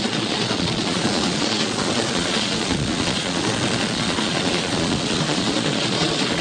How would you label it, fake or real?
fake